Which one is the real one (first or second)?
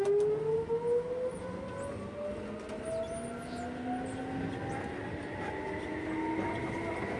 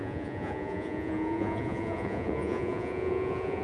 first